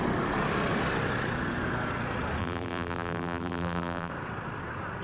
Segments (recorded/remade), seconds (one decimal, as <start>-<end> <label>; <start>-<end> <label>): 0.0-2.4 recorded; 2.4-4.1 remade; 4.1-5.0 recorded